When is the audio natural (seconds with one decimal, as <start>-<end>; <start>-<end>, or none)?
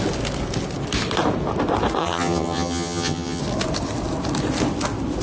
0.0-2.0; 3.4-5.2